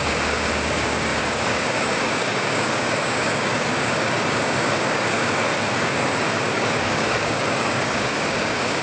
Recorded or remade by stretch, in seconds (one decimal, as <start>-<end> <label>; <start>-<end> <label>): 0.0-8.8 remade